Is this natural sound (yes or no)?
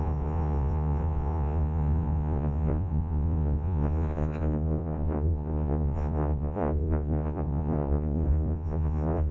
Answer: no